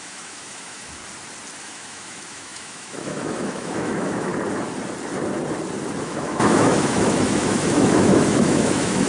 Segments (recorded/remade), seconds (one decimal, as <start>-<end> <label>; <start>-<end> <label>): 0.0-1.0 remade; 1.0-1.6 recorded; 1.6-4.3 remade; 4.3-6.0 recorded; 6.0-9.1 remade